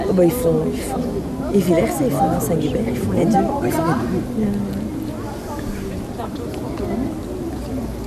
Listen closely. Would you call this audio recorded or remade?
recorded